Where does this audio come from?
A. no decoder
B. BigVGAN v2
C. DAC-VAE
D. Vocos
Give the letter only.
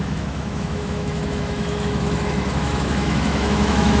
C